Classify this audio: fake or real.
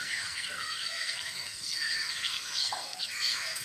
fake